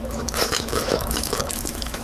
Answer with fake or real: fake